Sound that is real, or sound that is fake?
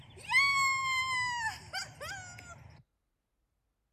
real